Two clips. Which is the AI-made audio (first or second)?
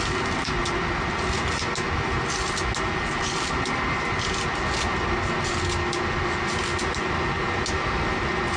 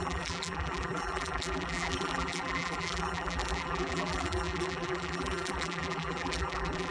second